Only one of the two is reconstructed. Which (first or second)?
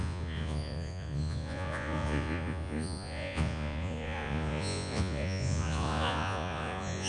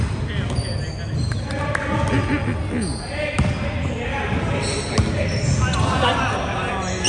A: first